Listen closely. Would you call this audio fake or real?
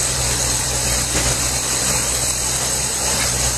fake